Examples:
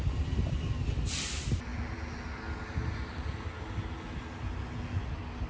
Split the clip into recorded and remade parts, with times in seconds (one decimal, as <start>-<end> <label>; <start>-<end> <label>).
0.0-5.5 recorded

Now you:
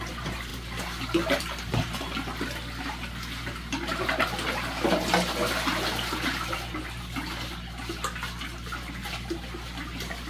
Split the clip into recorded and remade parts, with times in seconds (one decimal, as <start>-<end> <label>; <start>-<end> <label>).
0.0-10.3 recorded

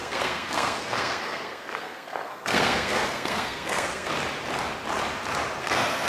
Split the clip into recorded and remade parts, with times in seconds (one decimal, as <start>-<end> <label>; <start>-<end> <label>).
0.0-4.1 remade; 4.1-5.6 recorded; 5.6-6.1 remade

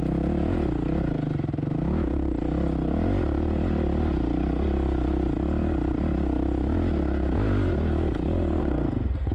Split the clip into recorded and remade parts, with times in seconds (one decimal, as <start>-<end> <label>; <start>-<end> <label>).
0.0-8.6 recorded; 8.6-9.3 remade

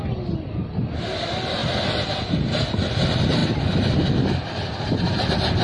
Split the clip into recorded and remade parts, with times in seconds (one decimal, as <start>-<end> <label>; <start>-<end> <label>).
0.0-5.6 recorded

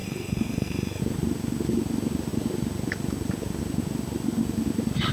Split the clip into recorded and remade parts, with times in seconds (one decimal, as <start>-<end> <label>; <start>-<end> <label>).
0.0-1.0 remade; 1.0-5.1 recorded

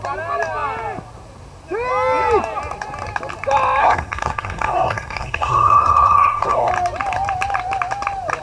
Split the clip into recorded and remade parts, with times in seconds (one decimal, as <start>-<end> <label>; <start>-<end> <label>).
0.0-3.8 recorded; 3.8-6.7 remade; 6.7-8.4 recorded